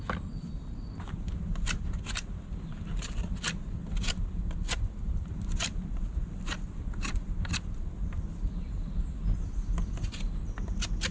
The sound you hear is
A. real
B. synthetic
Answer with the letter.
A